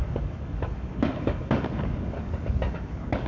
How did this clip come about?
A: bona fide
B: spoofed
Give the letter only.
B